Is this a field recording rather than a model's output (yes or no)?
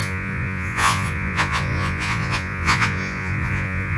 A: no